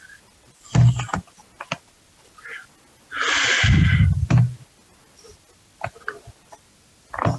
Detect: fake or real real